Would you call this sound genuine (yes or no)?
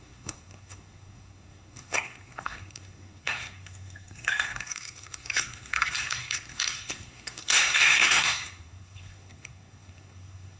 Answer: no